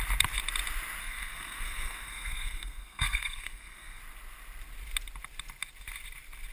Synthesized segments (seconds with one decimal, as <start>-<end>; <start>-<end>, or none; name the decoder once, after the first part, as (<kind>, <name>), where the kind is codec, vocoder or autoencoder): 1.0-4.0 (codec, SNAC)